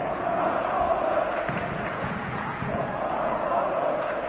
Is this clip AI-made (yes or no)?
yes